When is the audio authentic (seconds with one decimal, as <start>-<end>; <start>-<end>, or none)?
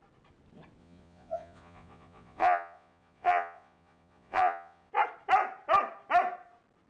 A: 0.0-0.8; 4.9-6.9